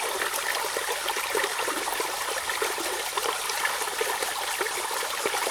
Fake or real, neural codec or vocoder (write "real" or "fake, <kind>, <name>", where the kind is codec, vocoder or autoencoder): real